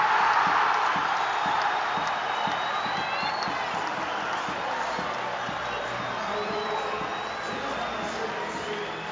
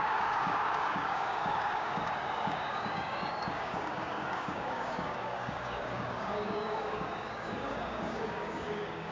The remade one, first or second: second